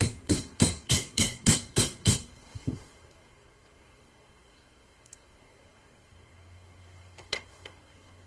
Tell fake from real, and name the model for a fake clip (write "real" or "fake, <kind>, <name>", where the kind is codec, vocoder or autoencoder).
fake, codec, SNAC